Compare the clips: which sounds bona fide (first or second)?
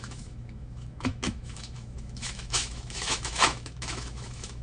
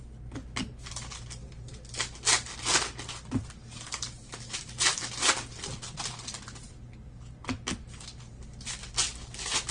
second